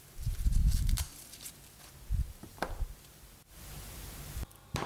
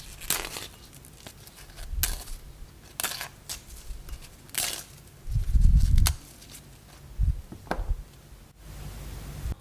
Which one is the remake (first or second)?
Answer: first